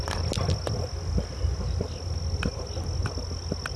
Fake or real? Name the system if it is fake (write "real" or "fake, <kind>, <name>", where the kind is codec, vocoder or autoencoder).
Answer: real